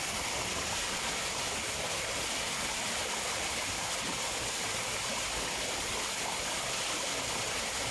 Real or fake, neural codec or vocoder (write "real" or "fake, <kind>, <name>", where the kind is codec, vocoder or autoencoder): real